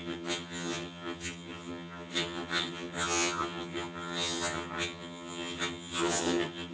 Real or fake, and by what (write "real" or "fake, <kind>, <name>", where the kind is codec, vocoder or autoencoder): fake, vocoder, HiFi-GAN